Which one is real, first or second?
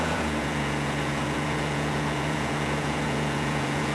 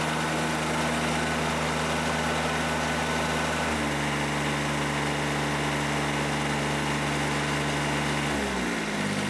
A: second